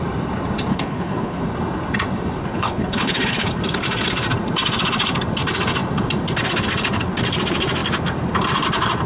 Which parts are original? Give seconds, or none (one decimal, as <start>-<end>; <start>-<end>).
0.0-0.7; 1.4-2.4; 3.6-9.1